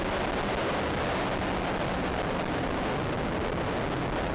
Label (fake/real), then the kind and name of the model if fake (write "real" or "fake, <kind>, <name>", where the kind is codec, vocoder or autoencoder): real